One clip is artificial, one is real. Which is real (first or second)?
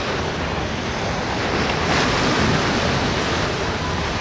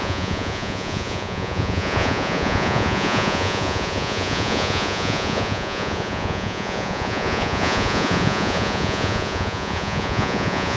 first